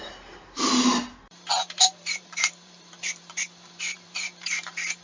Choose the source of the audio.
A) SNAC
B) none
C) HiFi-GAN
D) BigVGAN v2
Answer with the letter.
D